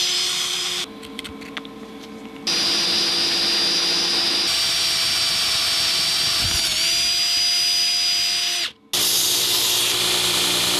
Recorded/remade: recorded